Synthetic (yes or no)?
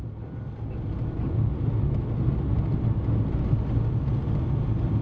no